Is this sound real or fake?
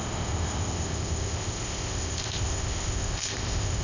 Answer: fake